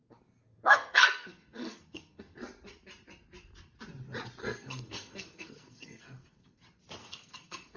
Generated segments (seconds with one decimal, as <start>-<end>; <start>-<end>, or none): 0.0-2.4; 4.4-6.6; 7.0-7.8